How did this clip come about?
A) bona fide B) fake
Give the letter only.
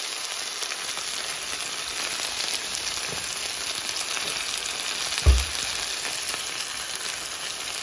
A